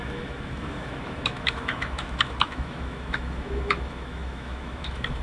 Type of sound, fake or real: fake